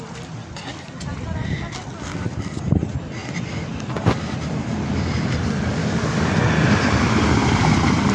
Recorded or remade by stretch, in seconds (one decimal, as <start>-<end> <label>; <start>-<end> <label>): 0.0-5.8 recorded; 5.8-6.3 remade; 6.3-8.1 recorded